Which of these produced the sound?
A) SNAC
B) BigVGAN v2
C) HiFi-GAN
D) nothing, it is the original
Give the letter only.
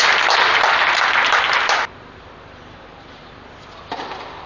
B